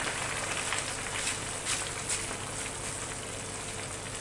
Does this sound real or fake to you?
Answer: real